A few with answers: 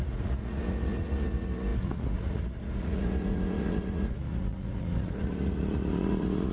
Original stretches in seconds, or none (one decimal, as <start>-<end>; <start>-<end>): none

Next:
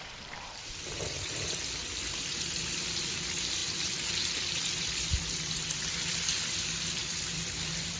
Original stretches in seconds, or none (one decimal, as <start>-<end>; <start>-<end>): none

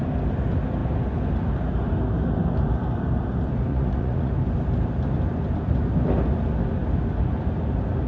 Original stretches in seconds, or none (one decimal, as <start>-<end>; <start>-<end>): 0.0-3.7; 4.3-8.1

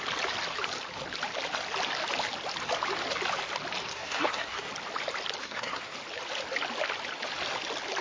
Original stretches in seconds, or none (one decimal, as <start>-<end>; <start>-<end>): 0.0-3.9; 4.7-5.4; 5.9-8.0

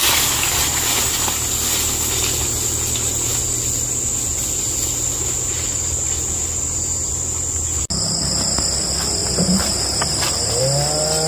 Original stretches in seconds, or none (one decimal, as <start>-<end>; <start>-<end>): 0.0-9.2; 10.6-11.3

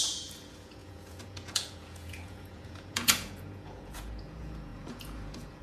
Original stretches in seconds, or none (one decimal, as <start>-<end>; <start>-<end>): none

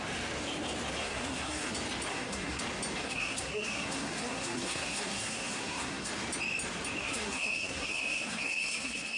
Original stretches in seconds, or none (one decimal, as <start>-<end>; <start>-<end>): 0.0-1.0; 1.7-2.1; 2.6-3.0; 6.1-7.0

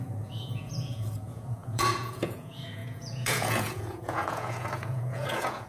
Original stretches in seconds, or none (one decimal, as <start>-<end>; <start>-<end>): none